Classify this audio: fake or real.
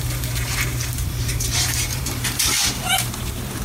fake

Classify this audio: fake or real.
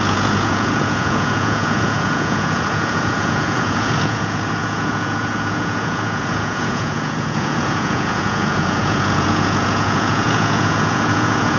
fake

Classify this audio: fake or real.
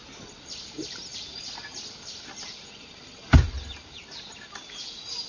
real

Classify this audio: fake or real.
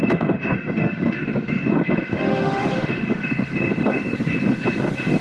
fake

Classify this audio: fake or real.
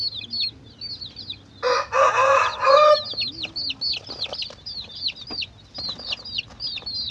real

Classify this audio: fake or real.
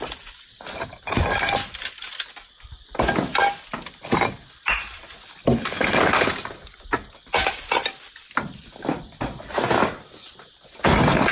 real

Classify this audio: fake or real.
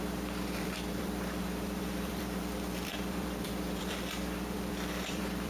fake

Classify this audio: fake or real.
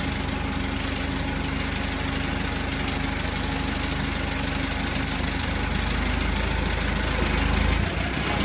real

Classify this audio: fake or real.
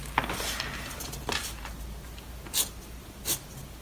real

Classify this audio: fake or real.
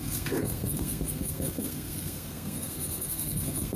fake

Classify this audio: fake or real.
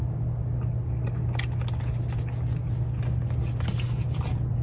real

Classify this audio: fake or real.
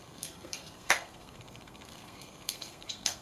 fake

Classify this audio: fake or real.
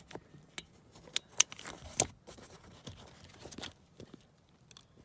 real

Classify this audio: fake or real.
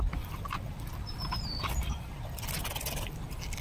real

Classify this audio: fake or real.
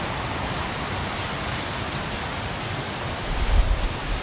real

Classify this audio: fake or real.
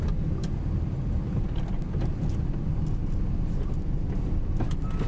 real